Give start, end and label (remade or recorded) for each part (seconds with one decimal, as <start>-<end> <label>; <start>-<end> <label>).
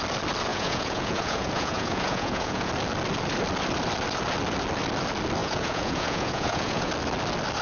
0.0-0.5 recorded; 0.5-2.7 remade; 2.7-5.4 recorded; 5.4-6.9 remade; 6.9-7.6 recorded